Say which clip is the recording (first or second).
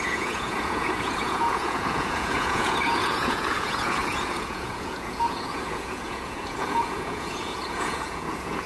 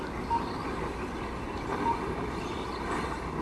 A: second